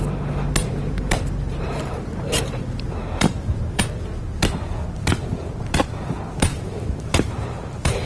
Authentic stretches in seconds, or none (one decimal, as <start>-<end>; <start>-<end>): 0.0-0.6; 3.8-6.5